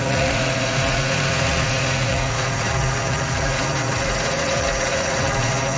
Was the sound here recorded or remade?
remade